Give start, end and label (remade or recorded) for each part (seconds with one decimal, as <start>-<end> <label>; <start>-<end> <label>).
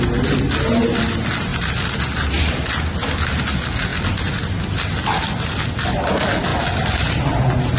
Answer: 0.0-7.8 recorded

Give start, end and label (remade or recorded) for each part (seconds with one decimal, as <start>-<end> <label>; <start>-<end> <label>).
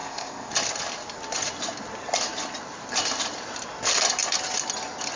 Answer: 0.0-0.5 remade; 0.5-5.2 recorded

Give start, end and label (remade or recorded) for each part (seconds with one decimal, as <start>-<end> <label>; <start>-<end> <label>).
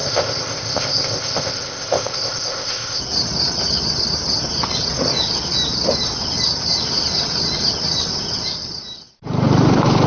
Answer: 0.0-3.0 remade; 3.0-10.1 recorded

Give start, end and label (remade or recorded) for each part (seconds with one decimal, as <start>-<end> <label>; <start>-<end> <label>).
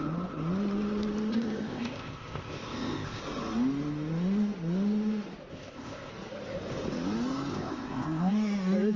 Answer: 0.0-1.3 recorded; 1.3-3.2 remade; 3.2-5.5 recorded; 5.5-6.1 remade; 6.1-7.5 recorded; 7.5-8.3 remade; 8.3-9.0 recorded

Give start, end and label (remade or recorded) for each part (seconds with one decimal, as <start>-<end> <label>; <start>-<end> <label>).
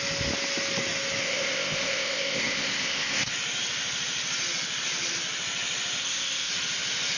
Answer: 0.0-1.2 recorded; 1.2-3.3 remade; 3.3-6.0 recorded; 6.0-6.5 remade; 6.5-7.2 recorded